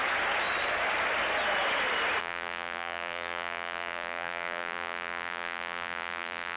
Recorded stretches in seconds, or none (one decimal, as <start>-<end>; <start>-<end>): 0.0-2.2